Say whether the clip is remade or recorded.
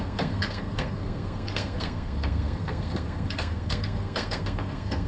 remade